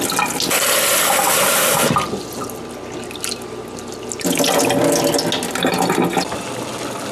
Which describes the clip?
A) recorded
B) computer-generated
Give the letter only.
A